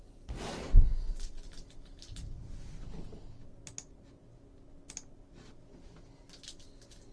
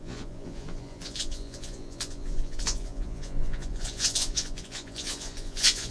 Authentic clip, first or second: first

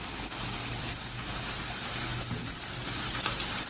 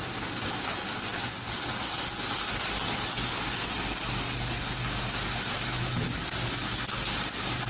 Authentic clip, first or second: second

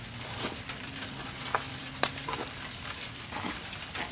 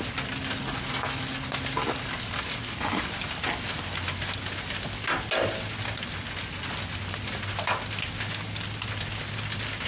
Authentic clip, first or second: second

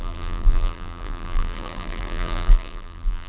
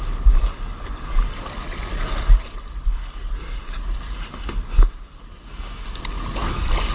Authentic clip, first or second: second